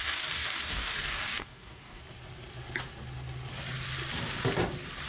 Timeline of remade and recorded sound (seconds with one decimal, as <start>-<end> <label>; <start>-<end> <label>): 0.0-2.0 remade; 2.0-5.1 recorded